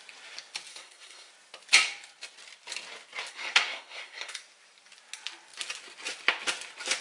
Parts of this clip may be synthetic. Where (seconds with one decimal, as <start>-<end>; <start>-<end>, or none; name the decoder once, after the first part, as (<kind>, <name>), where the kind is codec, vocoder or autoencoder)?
0.7-1.3 (codec, SNAC); 3.3-4.4